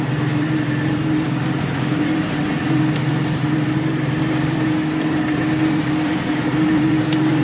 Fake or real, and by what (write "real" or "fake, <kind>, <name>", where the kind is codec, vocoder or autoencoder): fake, vocoder, BigVGAN v2